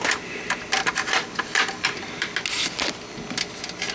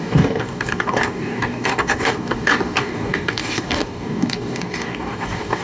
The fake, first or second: second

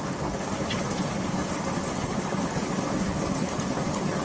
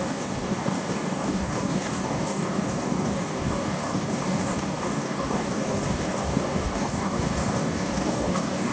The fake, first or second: second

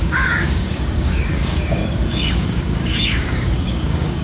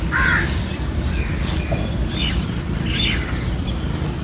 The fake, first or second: first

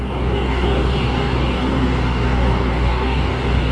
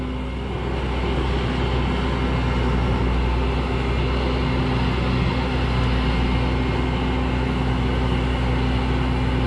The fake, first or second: first